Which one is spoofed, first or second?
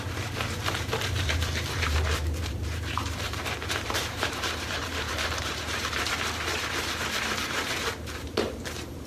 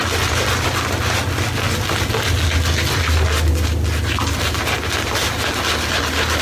first